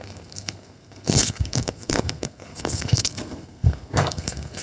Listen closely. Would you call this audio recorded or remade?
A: remade